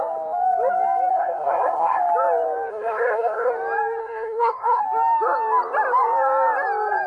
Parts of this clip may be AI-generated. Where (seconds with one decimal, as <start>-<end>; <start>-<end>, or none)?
1.1-2.0; 2.7-3.5; 4.0-4.8